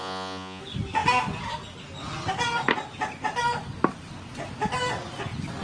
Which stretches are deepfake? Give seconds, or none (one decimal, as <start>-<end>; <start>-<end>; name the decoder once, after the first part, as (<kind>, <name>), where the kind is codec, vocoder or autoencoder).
0.0-0.6 (vocoder, Vocos)